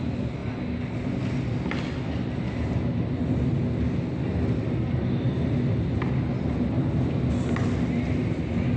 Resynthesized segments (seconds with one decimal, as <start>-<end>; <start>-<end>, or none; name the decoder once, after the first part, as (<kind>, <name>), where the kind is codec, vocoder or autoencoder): none